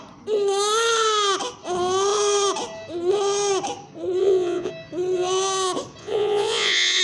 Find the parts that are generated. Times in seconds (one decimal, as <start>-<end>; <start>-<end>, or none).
4.2-4.7; 6.0-7.0